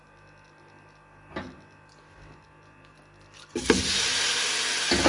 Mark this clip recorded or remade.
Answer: recorded